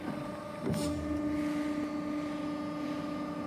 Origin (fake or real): real